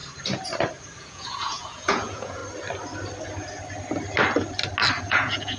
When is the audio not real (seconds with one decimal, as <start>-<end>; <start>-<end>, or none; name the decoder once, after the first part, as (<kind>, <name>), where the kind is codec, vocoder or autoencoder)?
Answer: 1.0-2.4 (vocoder, Vocos); 5.0-5.6